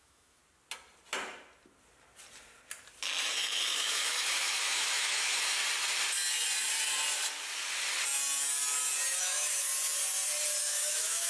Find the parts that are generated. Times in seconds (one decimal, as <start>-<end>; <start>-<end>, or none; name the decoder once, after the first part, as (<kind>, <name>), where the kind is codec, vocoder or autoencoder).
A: 0.0-0.4 (autoencoder, DAC-VAE); 3.2-5.6; 9.2-9.7; 10.6-11.3